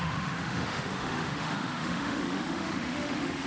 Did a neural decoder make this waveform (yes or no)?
yes